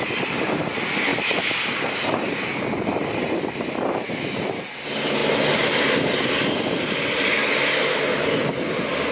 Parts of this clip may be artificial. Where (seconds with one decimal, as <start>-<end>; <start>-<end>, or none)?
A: none